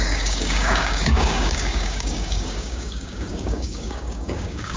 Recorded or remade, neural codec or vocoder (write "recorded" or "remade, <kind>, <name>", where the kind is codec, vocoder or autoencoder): remade, codec, DAC